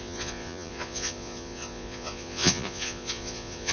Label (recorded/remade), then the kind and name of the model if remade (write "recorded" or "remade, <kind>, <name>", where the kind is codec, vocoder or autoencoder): remade, vocoder, Vocos